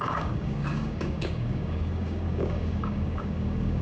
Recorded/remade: remade